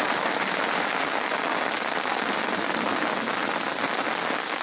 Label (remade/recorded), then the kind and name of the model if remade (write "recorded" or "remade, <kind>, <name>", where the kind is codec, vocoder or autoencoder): recorded